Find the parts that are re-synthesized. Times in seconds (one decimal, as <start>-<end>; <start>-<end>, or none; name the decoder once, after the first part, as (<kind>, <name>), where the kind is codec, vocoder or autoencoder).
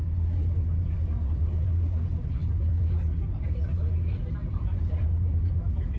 none